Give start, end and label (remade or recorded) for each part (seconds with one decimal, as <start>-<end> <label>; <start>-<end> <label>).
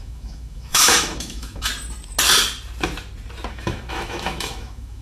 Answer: 0.0-1.7 remade; 1.7-3.5 recorded; 3.5-5.0 remade